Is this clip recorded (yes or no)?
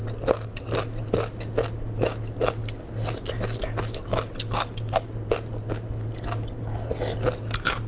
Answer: yes